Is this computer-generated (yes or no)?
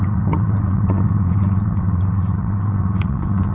yes